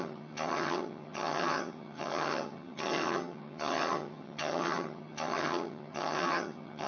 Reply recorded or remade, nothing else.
remade